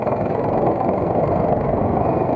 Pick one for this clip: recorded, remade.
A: remade